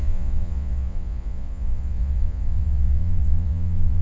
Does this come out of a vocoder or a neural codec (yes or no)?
yes